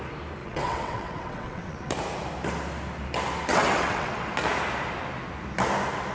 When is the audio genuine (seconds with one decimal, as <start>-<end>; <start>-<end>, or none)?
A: 0.0-0.4; 1.9-3.5; 4.3-6.1